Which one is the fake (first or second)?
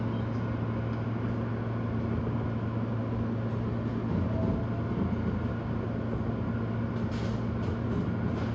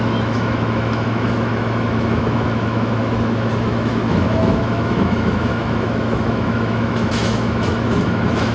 second